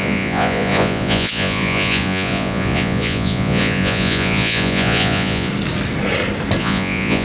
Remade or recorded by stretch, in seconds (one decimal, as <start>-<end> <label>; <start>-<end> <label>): 0.0-5.5 remade; 5.5-6.6 recorded; 6.6-7.2 remade